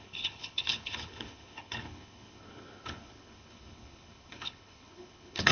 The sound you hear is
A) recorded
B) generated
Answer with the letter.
B